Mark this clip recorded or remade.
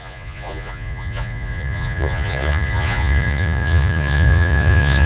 remade